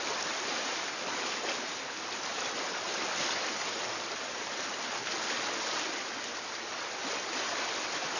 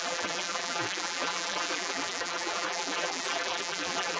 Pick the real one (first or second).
first